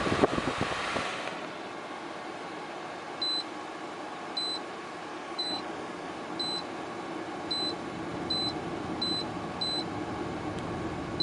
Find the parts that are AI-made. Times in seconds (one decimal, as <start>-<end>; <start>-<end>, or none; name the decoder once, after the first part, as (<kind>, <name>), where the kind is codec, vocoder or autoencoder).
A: 5.1-6.1 (codec, DAC)